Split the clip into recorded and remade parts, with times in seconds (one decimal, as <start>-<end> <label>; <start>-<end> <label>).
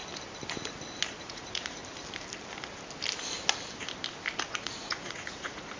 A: 0.0-1.2 recorded; 1.2-1.8 remade; 1.8-4.5 recorded; 4.5-5.8 remade